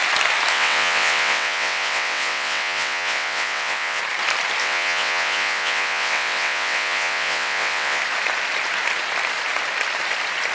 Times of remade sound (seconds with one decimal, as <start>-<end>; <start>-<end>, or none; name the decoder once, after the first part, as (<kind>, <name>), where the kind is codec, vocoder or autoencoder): 0.5-4.0 (vocoder, WaveNeXt); 4.6-8.0